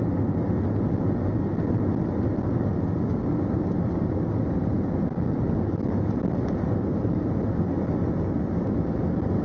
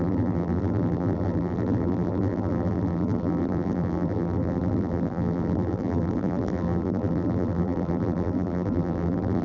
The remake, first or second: second